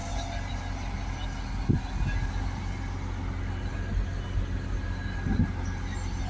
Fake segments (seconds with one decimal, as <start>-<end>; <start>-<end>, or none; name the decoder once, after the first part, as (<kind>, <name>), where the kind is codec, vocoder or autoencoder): none